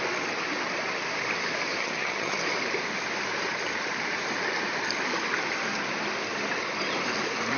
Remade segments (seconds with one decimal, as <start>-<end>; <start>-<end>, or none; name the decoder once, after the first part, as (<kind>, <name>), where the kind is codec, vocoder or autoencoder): 1.8-2.4 (vocoder, HiFi-GAN)